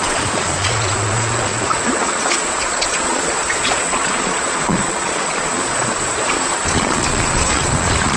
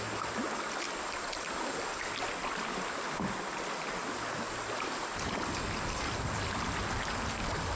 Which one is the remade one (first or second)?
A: first